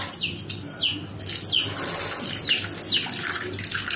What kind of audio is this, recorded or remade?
recorded